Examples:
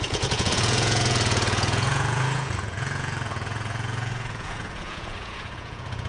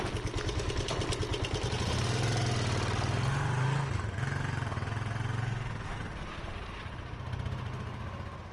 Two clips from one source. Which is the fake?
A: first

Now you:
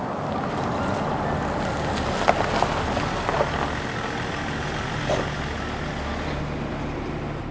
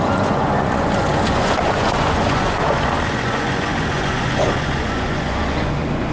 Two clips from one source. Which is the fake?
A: second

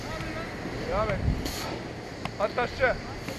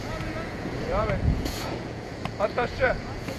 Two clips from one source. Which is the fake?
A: second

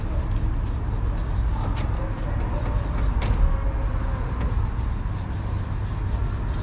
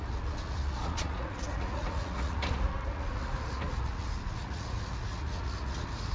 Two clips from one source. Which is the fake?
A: second